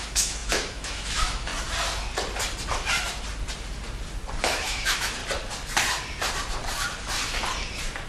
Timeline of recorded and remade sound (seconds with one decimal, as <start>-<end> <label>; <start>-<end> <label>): 0.0-1.5 remade; 1.5-4.4 recorded; 4.4-5.2 remade; 5.2-8.1 recorded